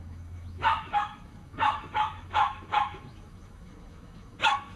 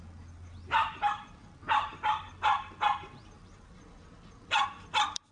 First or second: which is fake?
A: first